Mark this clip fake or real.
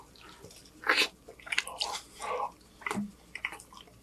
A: real